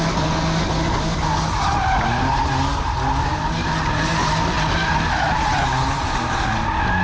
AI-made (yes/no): no